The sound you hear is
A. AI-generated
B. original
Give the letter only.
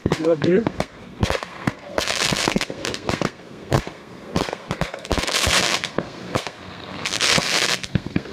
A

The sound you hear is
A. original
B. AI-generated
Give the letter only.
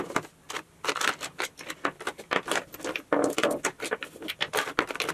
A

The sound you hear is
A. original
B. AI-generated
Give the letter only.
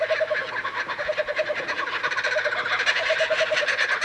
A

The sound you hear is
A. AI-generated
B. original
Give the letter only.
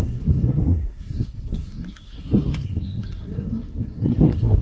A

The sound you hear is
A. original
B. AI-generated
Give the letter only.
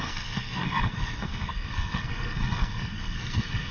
B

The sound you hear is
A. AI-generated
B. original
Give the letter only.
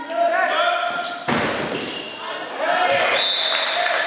B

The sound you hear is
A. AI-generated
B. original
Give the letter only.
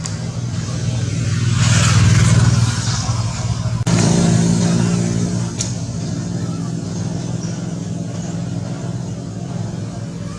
B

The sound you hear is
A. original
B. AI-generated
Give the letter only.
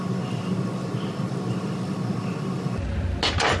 A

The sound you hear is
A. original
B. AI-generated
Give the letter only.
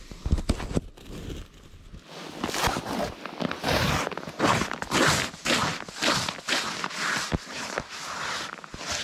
A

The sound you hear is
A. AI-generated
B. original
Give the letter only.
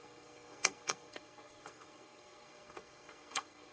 A